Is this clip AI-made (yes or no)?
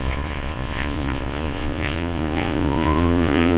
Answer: yes